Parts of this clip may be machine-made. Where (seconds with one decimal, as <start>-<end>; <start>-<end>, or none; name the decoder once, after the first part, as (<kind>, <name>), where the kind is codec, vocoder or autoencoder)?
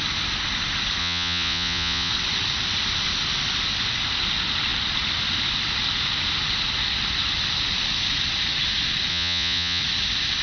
1.0-2.1 (vocoder, Vocos); 9.1-9.8